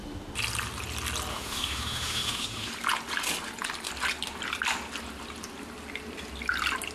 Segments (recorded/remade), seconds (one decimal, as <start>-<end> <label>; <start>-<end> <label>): 0.0-1.3 recorded; 1.3-2.7 remade; 2.7-6.9 recorded